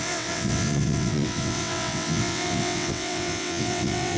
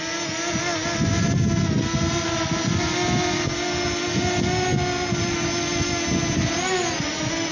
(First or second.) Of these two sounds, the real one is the second